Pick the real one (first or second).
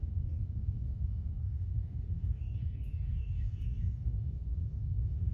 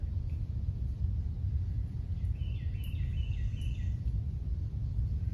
second